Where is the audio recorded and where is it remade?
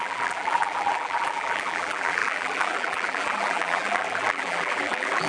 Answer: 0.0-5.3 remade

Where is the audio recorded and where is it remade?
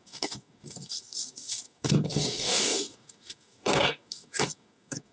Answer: 0.0-5.1 remade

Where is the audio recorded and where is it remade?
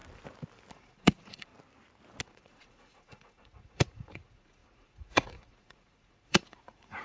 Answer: 0.0-0.7 recorded; 0.7-1.5 remade; 1.5-2.2 recorded; 2.2-7.0 remade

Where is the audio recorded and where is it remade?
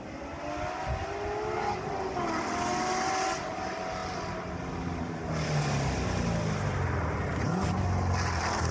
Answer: 0.0-8.7 recorded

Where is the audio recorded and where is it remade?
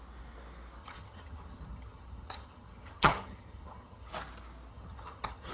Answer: 0.0-0.8 recorded; 0.8-4.1 remade; 4.1-4.7 recorded; 4.7-5.5 remade